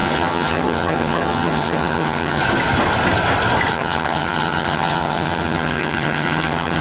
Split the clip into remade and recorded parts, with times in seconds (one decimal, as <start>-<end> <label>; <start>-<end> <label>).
0.0-2.4 remade; 2.4-3.7 recorded; 3.7-6.8 remade

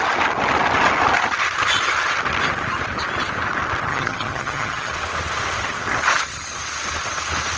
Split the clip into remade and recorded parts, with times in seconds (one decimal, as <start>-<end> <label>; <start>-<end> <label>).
0.0-3.9 recorded; 3.9-4.9 remade; 4.9-7.6 recorded

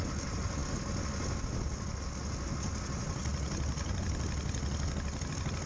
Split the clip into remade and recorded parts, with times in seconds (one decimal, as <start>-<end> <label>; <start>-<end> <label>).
0.0-5.7 recorded

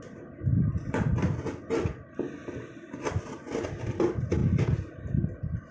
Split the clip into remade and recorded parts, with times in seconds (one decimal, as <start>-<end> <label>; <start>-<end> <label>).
0.0-5.7 recorded

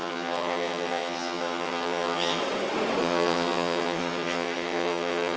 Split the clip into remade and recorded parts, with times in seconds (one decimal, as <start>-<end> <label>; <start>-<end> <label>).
0.0-2.4 remade; 2.4-3.0 recorded; 3.0-5.4 remade

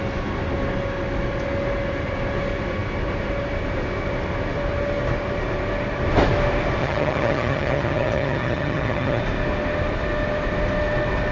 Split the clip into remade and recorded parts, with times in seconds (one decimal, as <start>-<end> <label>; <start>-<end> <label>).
0.0-6.8 recorded; 6.8-9.2 remade; 9.2-11.3 recorded

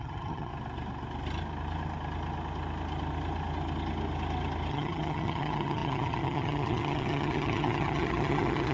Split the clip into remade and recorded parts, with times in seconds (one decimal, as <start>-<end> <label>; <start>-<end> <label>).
0.0-0.5 remade; 0.5-4.7 recorded; 4.7-8.7 remade